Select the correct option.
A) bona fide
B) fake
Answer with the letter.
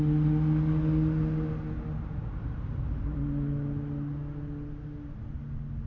A